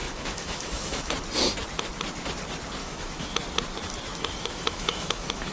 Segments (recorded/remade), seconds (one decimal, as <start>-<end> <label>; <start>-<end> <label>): 0.0-1.1 remade; 1.1-2.8 recorded; 2.8-3.3 remade; 3.3-4.1 recorded; 4.1-5.5 remade